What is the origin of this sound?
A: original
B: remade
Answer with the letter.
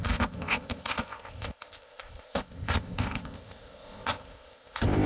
B